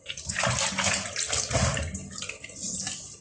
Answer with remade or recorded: recorded